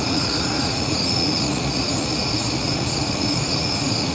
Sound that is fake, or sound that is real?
fake